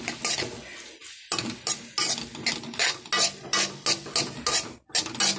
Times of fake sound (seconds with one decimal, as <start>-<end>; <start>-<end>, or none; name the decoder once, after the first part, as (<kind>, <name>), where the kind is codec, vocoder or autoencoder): none